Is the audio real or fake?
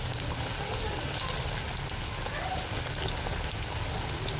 real